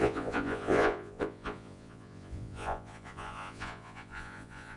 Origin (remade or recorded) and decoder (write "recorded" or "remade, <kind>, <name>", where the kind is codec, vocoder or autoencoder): remade, vocoder, Vocos